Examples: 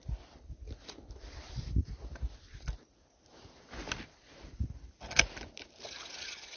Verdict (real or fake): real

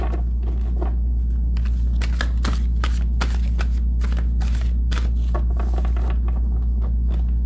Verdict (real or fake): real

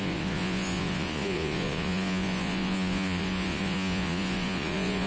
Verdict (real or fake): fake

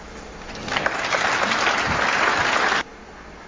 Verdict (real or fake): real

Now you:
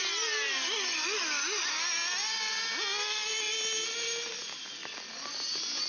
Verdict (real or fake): real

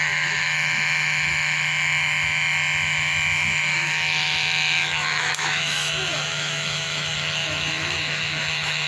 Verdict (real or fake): fake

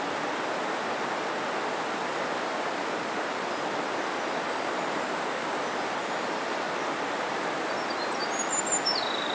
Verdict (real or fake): real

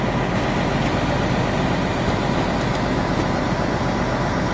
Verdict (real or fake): real